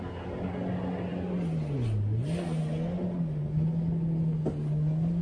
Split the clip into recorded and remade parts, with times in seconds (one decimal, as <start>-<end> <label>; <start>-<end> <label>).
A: 0.0-5.2 recorded